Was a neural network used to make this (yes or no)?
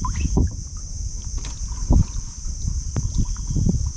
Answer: no